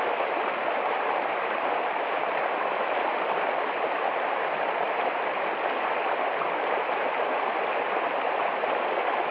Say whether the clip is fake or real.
real